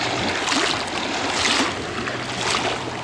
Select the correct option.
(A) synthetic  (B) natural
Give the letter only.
B